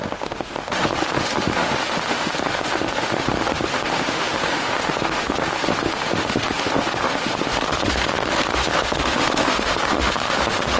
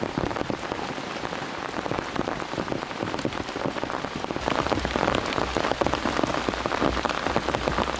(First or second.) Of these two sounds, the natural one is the second